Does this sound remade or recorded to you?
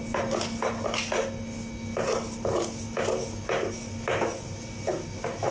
recorded